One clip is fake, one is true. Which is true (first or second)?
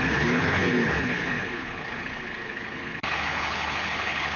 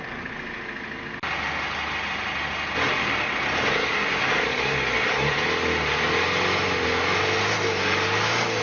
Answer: second